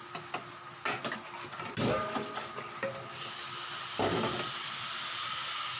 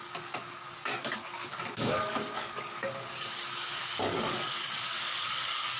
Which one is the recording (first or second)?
first